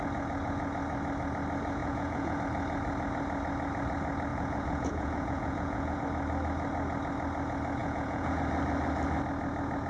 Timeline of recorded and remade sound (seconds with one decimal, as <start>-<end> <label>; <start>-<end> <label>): 0.0-1.8 recorded; 1.8-2.4 remade; 2.4-4.3 recorded; 4.3-6.0 remade; 6.0-7.8 recorded; 7.8-8.4 remade; 8.4-9.9 recorded